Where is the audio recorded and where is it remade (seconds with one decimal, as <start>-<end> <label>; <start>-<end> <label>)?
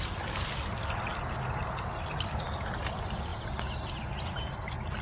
0.0-5.0 recorded